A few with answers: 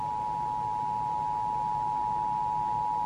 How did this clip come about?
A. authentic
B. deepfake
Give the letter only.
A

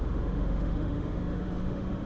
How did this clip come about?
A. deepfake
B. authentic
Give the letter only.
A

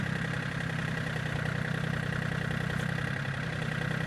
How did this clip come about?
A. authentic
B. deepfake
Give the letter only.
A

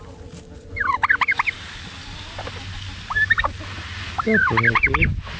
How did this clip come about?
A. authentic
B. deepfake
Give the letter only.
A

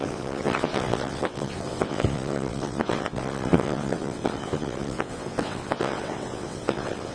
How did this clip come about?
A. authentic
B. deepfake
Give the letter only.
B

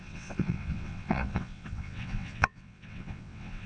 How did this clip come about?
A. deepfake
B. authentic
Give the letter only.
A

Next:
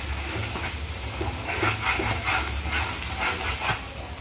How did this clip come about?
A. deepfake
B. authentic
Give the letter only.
B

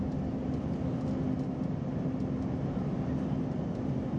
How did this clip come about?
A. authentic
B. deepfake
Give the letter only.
A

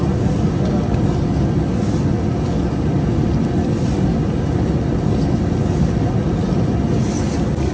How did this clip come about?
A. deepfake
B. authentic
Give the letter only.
B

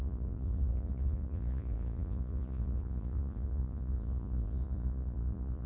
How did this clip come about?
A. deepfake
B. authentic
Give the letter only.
A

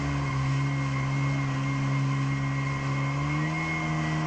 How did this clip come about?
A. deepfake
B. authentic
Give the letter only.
B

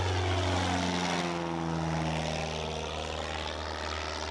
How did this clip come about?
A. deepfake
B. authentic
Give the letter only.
B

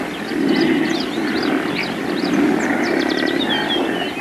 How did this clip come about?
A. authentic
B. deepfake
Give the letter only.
A